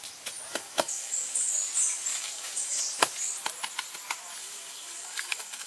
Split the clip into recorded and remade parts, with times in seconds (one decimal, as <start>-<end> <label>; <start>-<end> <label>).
0.0-0.5 recorded; 0.5-1.5 remade; 1.5-2.1 recorded; 2.1-2.8 remade; 2.8-4.4 recorded; 4.4-5.7 remade